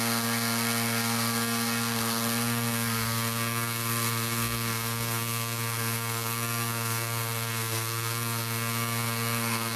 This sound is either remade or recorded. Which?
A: remade